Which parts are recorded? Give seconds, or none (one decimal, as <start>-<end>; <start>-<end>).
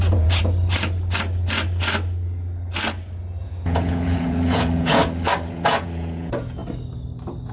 0.4-3.4; 5.0-5.5; 6.6-7.5